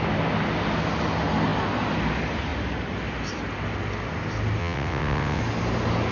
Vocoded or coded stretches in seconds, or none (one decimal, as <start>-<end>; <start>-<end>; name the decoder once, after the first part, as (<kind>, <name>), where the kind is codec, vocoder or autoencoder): 4.6-5.4 (vocoder, WaveNeXt)